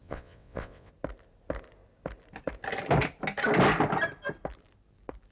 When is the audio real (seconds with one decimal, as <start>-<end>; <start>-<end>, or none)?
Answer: 0.9-5.3